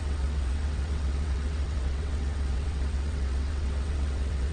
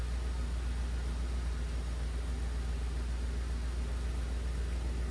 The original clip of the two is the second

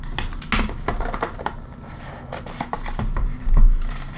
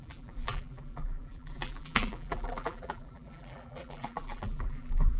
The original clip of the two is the first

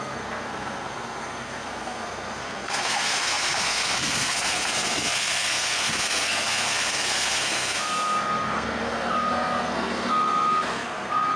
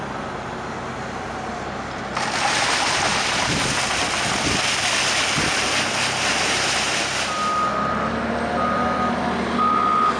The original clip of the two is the second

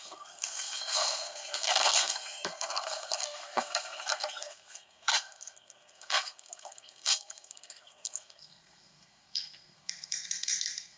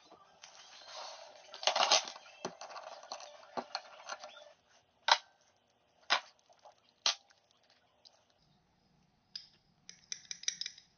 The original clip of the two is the second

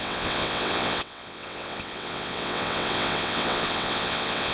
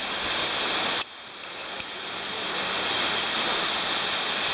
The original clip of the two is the second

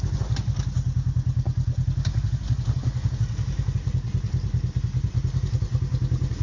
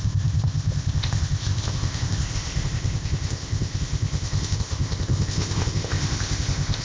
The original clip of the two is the first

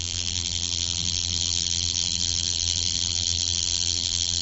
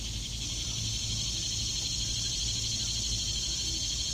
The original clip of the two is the second